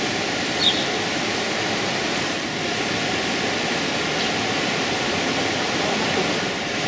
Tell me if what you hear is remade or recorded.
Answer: recorded